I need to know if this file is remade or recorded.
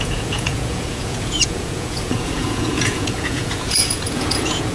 remade